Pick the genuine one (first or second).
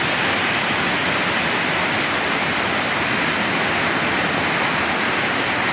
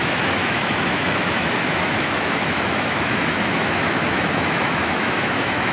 first